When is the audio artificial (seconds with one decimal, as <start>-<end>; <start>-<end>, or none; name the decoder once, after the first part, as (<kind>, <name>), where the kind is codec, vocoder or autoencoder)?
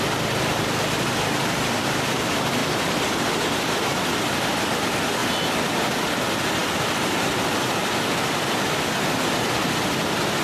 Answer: 2.6-4.0 (vocoder, BigVGAN v2)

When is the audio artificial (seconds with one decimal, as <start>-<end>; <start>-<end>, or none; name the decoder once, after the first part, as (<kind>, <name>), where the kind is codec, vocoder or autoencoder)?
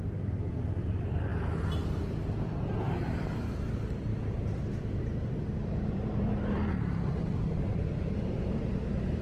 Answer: 4.1-6.7 (vocoder, BigVGAN v2); 7.7-8.4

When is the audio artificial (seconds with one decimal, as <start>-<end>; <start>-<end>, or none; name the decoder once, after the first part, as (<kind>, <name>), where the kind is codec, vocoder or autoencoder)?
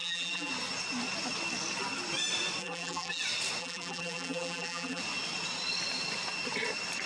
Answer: 0.0-0.5 (vocoder, BigVGAN v2); 2.6-3.2; 3.6-5.0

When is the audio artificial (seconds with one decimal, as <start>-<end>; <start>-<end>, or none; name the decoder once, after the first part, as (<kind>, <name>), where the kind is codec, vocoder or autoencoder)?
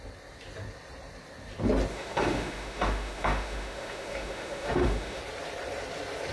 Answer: 1.9-5.2 (autoencoder, DAC-VAE)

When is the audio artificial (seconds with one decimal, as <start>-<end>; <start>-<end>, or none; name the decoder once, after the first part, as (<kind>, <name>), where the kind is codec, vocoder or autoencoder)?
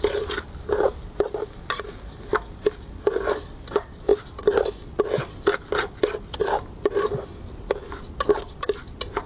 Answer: none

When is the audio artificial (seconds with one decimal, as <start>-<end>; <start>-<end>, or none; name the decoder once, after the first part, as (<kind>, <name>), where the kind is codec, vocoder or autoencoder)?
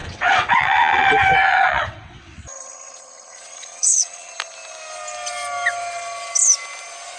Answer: 0.0-4.3 (vocoder, WaveNeXt)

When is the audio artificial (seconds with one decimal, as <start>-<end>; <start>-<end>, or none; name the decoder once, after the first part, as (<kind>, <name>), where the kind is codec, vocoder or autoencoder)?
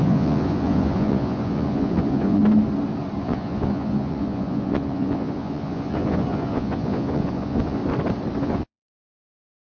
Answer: 0.0-2.4 (vocoder, Vocos); 3.2-7.8; 8.4-9.7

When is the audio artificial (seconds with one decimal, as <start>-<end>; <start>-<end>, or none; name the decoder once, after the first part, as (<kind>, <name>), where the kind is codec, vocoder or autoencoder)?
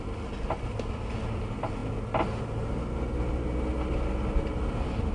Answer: none